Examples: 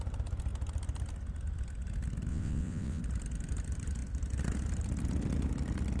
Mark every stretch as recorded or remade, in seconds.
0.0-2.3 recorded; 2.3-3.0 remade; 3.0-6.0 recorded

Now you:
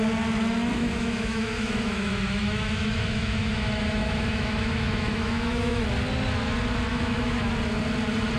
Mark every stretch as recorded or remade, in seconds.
0.0-0.8 recorded; 0.8-5.8 remade; 5.8-6.9 recorded; 6.9-7.5 remade; 7.5-8.4 recorded

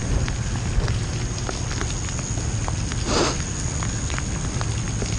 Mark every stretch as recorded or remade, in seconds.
0.0-5.2 recorded

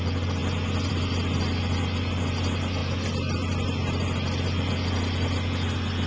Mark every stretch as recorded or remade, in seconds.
0.0-6.1 recorded

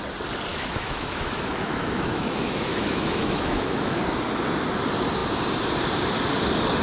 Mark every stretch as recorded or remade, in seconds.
0.0-0.5 recorded; 0.5-4.0 remade; 4.0-6.8 recorded

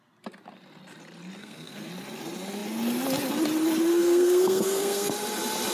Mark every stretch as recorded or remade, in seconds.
0.0-1.4 recorded; 1.4-1.9 remade; 1.9-3.9 recorded; 3.9-5.1 remade; 5.1-5.7 recorded